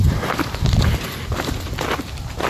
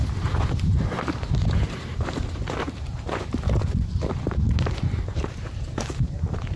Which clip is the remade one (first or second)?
second